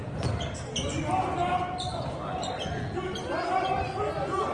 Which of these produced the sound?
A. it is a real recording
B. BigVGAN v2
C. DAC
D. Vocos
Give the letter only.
A